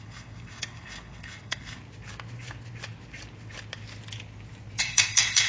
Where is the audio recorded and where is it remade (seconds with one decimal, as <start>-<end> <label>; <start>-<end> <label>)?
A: 0.0-1.8 remade; 1.8-4.8 recorded; 4.8-5.5 remade